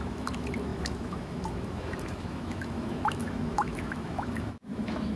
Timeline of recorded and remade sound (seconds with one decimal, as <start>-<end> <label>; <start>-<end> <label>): 0.0-5.2 remade